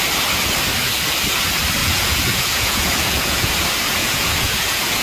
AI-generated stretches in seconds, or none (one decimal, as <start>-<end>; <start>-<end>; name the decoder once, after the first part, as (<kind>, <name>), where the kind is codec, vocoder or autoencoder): 1.8-3.5 (vocoder, Vocos); 4.0-5.0